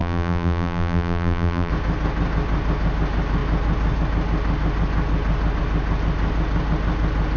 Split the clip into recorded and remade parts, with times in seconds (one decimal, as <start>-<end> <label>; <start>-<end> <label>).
0.0-1.7 remade; 1.7-7.4 recorded